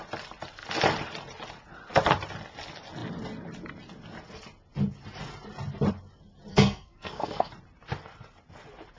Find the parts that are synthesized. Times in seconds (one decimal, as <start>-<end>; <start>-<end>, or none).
6.5-7.5